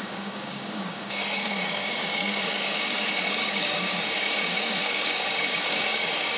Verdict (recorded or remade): remade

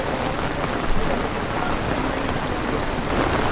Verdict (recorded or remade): recorded